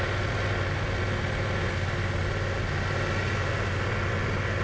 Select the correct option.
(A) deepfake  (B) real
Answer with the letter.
B